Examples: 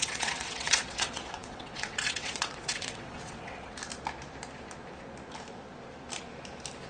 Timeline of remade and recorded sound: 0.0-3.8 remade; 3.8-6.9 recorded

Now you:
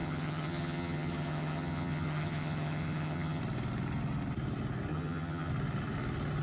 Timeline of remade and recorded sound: 0.0-3.4 remade; 3.4-4.9 recorded; 4.9-5.5 remade; 5.5-6.4 recorded

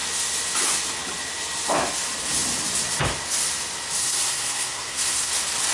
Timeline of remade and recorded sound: 0.0-4.0 recorded; 4.0-5.3 remade; 5.3-5.7 recorded

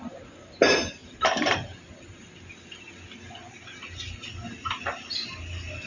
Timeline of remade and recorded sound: 0.0-1.0 recorded; 1.0-1.9 remade; 1.9-5.9 recorded

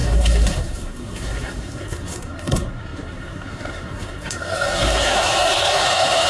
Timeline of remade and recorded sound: 0.0-6.3 remade

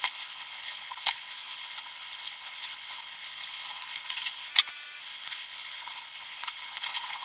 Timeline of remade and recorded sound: 0.0-4.5 remade; 4.5-5.0 recorded; 5.0-7.2 remade

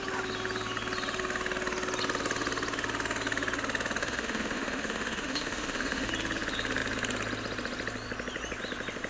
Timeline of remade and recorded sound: 0.0-4.0 recorded; 4.0-6.1 remade; 6.1-9.1 recorded